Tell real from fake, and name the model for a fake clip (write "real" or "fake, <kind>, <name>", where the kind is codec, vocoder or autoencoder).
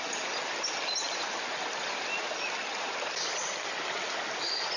real